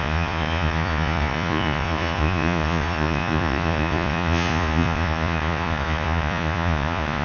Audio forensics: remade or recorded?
remade